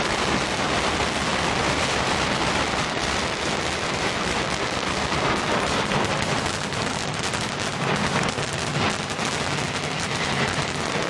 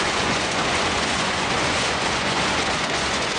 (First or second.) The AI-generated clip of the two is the second